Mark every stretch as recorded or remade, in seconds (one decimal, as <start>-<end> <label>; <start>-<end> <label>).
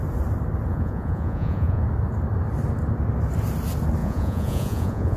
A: 0.0-0.7 recorded; 0.7-1.8 remade; 1.8-4.0 recorded; 4.0-5.2 remade